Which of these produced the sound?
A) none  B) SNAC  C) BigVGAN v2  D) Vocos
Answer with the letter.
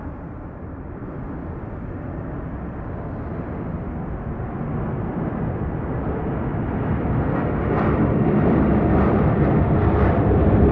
C